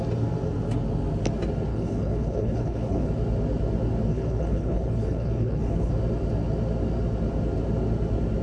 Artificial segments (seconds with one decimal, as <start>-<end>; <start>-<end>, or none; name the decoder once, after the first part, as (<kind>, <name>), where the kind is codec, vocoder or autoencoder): 1.7-3.1 (codec, HILCodec); 4.1-5.9